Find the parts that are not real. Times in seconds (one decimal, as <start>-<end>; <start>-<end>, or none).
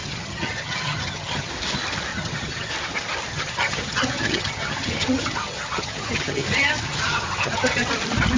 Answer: 0.0-1.5; 2.1-2.7; 3.3-7.9